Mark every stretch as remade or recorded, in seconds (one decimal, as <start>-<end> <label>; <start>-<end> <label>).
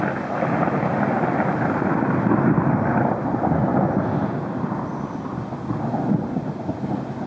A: 0.0-7.3 recorded